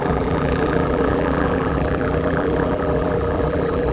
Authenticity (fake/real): fake